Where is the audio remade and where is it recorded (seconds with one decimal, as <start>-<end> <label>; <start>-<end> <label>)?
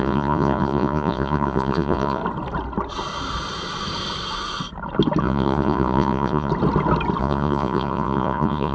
0.0-2.2 remade; 2.2-5.2 recorded; 5.2-6.5 remade; 6.5-7.2 recorded; 7.2-8.7 remade